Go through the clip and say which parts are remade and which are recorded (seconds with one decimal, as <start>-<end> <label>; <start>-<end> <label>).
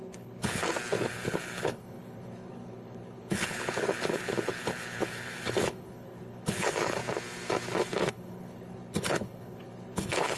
0.0-0.6 remade; 0.6-1.1 recorded; 1.1-7.0 remade; 7.0-8.1 recorded; 8.1-10.4 remade